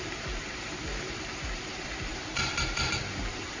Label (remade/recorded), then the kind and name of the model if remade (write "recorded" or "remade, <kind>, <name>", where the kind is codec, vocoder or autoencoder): remade, vocoder, BigVGAN v2